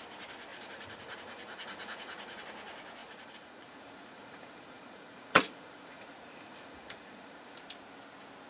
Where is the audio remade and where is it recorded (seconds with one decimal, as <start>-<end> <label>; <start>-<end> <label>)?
0.0-0.5 recorded; 0.5-2.4 remade; 2.4-3.0 recorded; 3.0-7.6 remade; 7.6-8.5 recorded